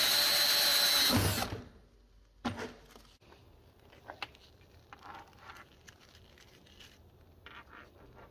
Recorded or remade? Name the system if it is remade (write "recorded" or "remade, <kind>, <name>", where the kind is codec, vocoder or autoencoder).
recorded